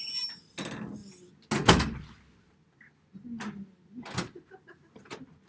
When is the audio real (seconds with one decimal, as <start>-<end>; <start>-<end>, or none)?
0.0-5.5